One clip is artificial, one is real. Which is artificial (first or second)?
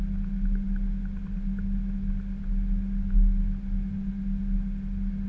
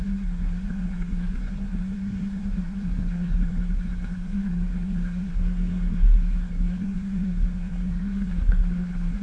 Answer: second